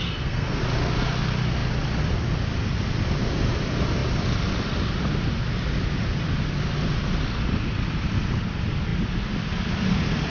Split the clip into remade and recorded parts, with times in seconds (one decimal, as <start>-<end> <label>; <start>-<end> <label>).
0.0-0.6 remade; 0.6-10.3 recorded